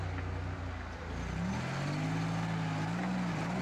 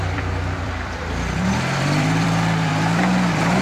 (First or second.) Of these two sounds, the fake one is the second